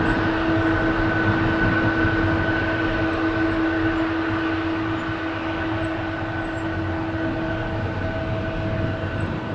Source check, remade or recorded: recorded